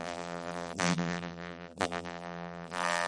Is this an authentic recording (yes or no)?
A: no